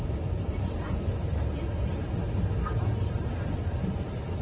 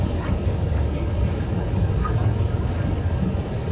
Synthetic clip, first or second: second